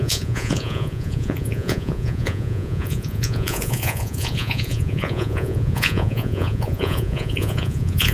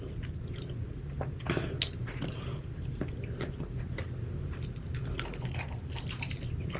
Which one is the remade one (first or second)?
first